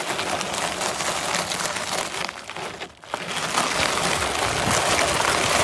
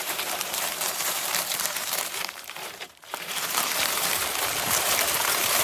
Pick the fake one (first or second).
second